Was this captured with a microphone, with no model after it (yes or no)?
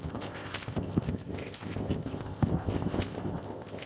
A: no